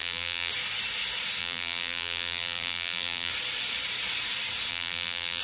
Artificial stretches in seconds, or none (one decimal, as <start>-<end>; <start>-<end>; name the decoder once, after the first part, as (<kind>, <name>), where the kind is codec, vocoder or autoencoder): 0.0-0.5 (vocoder, BigVGAN v2); 1.4-3.3; 4.7-5.4

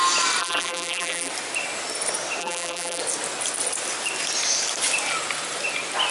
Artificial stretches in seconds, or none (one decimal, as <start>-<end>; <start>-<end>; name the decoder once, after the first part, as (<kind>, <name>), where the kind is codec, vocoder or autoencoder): 0.4-1.3 (vocoder, BigVGAN v2); 2.4-3.0

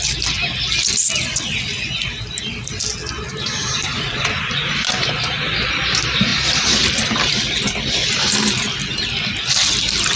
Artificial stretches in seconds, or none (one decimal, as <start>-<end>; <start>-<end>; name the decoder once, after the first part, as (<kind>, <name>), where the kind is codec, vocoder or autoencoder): 3.3-4.4 (vocoder, BigVGAN v2); 6.3-6.9

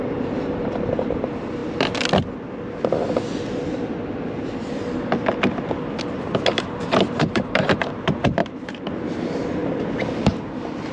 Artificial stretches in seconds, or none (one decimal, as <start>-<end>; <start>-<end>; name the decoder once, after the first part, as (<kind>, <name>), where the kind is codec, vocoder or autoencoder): 0.0-1.6 (vocoder, BigVGAN v2); 6.8-9.6; 10.2-10.9

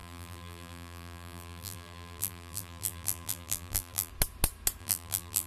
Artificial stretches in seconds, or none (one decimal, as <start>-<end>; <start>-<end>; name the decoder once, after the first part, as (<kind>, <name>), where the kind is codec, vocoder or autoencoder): 0.0-4.1 (vocoder, BigVGAN v2); 4.8-5.5

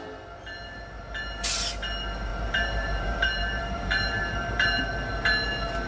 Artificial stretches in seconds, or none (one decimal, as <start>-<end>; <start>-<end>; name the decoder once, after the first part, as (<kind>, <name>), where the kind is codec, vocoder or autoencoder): 2.3-4.8 (vocoder, BigVGAN v2)